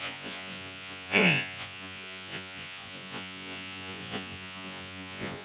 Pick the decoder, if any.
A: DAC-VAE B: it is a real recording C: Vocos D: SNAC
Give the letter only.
C